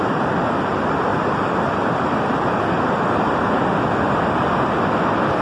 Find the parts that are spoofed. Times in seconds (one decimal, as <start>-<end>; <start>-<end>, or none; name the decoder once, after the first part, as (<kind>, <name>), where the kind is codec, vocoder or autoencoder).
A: none